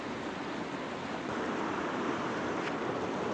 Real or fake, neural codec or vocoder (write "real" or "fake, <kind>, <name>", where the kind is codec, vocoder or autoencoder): real